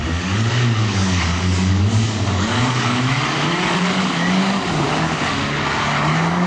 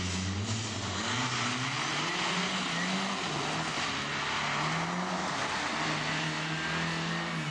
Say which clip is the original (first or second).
second